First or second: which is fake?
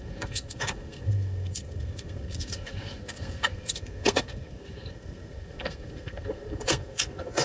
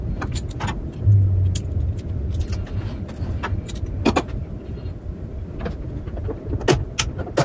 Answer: first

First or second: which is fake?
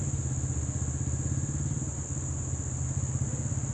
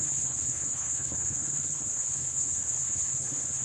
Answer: second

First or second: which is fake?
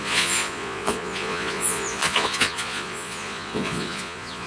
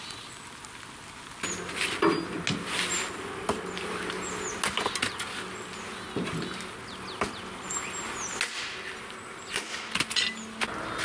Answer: first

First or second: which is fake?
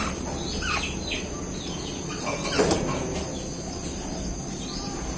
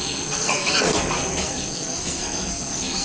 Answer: second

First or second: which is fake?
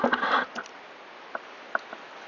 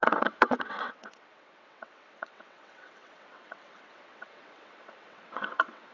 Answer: second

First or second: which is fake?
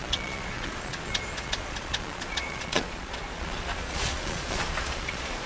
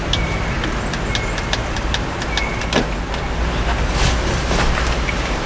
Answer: first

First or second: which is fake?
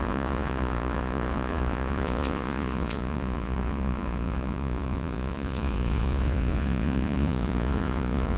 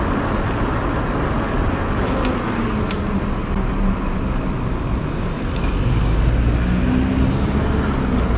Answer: first